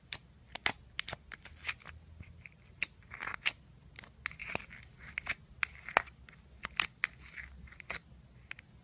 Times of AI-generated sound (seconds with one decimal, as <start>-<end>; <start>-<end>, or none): none